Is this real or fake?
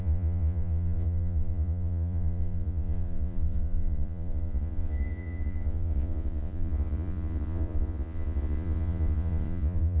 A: fake